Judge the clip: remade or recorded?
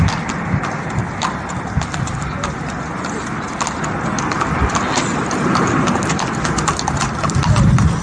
recorded